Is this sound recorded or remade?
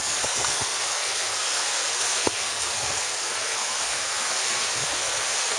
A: remade